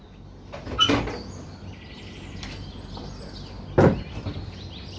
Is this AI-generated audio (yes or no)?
no